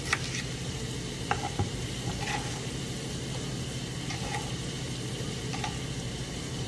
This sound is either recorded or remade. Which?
recorded